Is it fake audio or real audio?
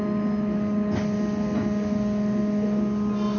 real